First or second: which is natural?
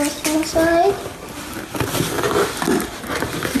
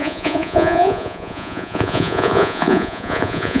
first